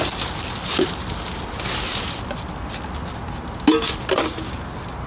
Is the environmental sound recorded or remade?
recorded